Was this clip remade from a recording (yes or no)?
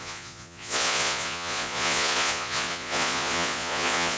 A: yes